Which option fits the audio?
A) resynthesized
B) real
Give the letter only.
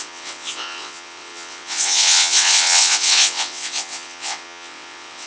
A